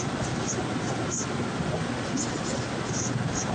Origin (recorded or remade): recorded